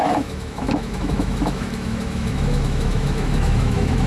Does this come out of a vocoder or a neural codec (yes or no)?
yes